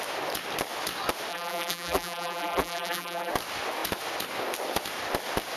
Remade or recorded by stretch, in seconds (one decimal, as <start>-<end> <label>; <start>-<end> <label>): 0.0-1.3 recorded; 1.3-3.3 remade; 3.3-5.6 recorded